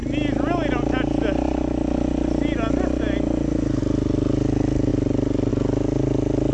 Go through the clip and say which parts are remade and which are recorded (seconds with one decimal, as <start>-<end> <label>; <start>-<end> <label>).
0.0-6.5 recorded